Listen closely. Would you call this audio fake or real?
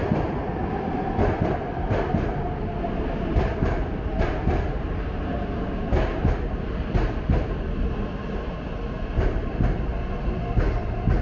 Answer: real